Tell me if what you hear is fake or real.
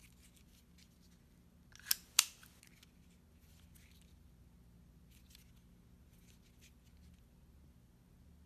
real